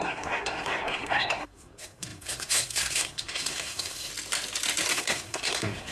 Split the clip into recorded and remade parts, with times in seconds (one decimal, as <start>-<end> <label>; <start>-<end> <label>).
0.0-4.1 remade; 4.1-4.9 recorded; 4.9-5.9 remade